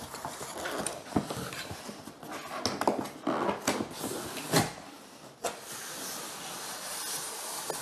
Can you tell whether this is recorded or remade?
recorded